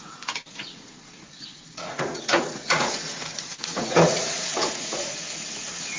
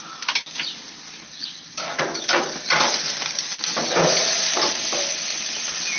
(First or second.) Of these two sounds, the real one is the second